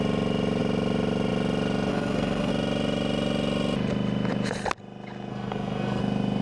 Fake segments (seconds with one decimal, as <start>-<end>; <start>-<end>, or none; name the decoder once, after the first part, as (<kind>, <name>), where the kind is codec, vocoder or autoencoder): 1.9-2.5 (codec, SNAC); 5.3-6.0